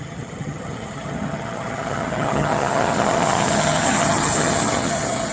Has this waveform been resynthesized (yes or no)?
yes